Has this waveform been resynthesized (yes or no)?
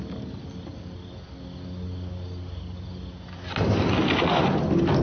no